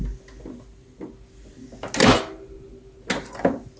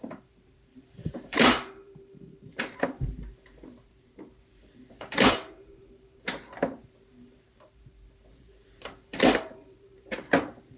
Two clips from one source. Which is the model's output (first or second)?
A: second